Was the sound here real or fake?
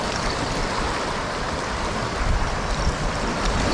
fake